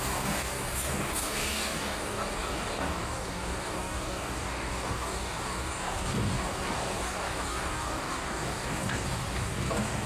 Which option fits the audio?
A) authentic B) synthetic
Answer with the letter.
B